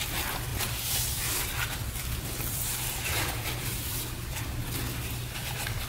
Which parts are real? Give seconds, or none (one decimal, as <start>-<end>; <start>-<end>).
0.0-0.5; 4.0-5.9